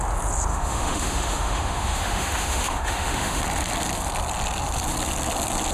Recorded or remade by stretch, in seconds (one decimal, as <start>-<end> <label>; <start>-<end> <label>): 0.0-0.5 recorded; 0.5-3.4 remade; 3.4-5.7 recorded